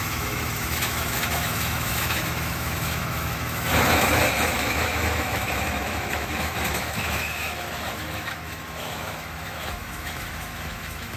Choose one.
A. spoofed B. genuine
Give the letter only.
A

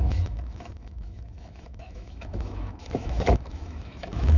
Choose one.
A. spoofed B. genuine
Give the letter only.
A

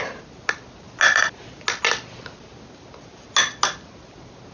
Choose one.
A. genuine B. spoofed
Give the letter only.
A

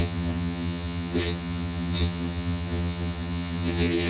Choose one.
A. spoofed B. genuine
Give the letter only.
A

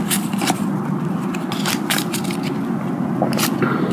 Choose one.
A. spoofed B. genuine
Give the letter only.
B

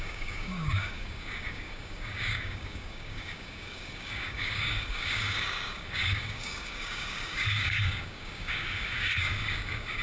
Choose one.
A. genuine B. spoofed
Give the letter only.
B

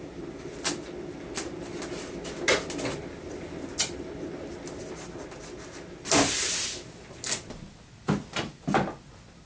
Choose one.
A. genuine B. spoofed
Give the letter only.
A